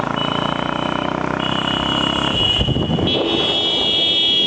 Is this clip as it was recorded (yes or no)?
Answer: yes